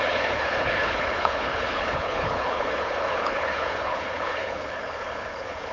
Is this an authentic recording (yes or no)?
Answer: no